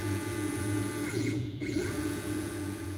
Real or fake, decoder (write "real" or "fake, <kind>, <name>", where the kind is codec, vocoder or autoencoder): fake, vocoder, Vocos